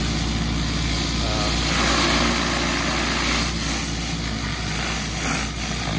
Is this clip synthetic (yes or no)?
no